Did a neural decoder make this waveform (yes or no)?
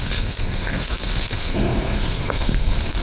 yes